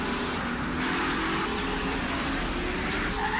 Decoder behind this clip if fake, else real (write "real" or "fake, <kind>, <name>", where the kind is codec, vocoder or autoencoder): real